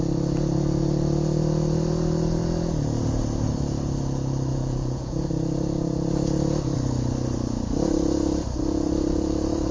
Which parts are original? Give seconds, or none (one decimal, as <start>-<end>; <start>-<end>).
0.0-4.5; 5.2-9.7